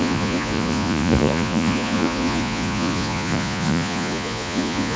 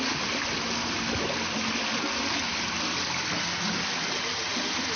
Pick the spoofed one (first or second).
first